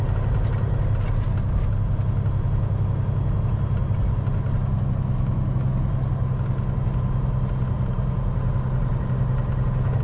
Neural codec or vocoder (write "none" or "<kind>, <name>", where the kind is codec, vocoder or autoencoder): none